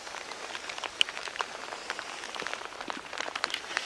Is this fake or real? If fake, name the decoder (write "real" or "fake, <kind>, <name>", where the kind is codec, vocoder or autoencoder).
fake, vocoder, BigVGAN v2